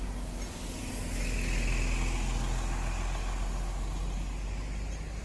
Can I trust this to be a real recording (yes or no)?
yes